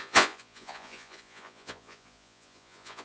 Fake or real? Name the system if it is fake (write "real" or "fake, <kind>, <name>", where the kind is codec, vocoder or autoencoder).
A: fake, vocoder, Vocos